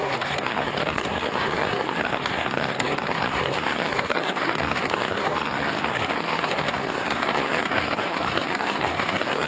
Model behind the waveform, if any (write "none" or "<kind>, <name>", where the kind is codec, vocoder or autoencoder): codec, SNAC